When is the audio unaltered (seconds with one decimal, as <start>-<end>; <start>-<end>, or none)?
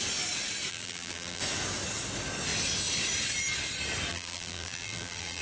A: 0.0-0.7; 1.4-4.1